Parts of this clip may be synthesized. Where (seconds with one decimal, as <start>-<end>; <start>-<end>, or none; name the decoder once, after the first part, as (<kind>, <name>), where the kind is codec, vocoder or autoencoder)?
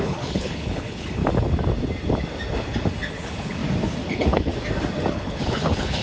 0.0-1.2 (codec, HILCodec); 3.2-3.6; 4.1-4.5; 5.1-6.0